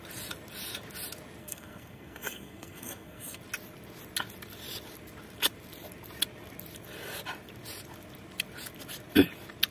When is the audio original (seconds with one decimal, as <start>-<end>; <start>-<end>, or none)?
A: 0.0-1.4; 3.4-9.7